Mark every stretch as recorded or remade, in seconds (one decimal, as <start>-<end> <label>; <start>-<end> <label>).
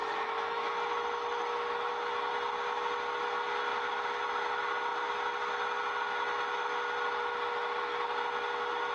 0.0-1.9 remade; 1.9-8.9 recorded